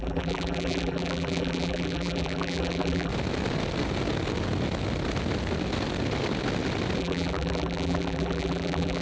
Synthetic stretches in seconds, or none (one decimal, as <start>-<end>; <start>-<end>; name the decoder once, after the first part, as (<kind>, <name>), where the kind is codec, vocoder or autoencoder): 0.0-3.1 (vocoder, BigVGAN v2); 7.0-9.0